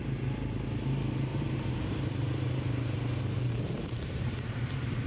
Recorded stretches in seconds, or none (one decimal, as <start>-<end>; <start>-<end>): 0.0-1.3; 4.4-5.1